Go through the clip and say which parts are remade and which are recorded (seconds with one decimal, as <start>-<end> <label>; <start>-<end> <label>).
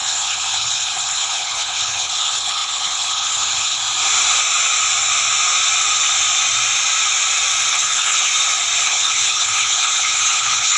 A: 0.0-3.8 remade; 3.8-7.7 recorded; 7.7-8.3 remade; 8.3-8.8 recorded; 8.8-10.8 remade